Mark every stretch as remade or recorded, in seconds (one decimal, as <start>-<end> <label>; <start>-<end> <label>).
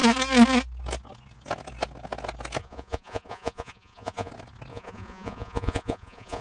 0.0-2.6 recorded; 2.6-4.3 remade; 4.3-4.7 recorded; 4.7-6.4 remade